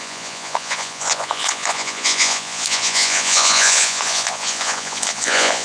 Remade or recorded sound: remade